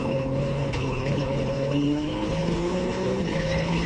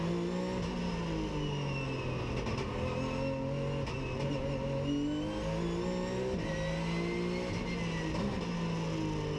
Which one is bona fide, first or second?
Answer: second